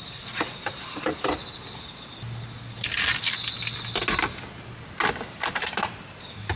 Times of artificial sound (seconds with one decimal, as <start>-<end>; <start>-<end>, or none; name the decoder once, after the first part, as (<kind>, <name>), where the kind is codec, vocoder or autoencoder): 0.0-1.4 (vocoder, BigVGAN v2); 5.4-6.6